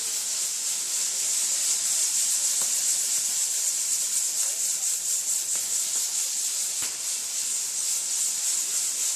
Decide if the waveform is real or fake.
real